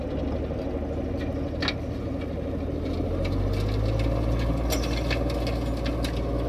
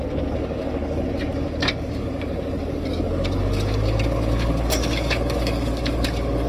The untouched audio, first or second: first